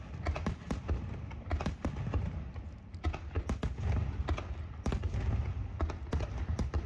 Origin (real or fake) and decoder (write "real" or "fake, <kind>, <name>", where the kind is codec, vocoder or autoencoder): real